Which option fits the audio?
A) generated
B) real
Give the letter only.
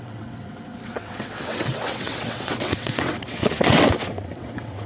A